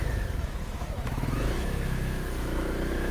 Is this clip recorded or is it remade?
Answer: remade